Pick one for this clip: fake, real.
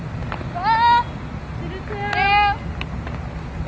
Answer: real